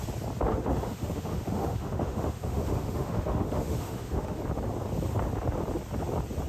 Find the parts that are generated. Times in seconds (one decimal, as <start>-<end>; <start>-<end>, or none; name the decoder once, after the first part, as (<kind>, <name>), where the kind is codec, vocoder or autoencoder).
0.5-4.4 (autoencoder, DAC-VAE)